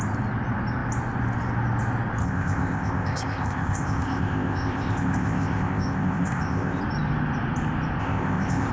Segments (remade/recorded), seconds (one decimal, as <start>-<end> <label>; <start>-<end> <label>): 0.0-2.2 recorded; 2.2-6.8 remade; 6.8-8.0 recorded; 8.0-8.7 remade